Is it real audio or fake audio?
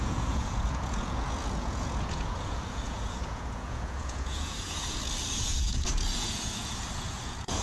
fake